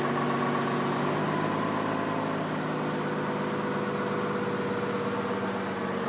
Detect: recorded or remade recorded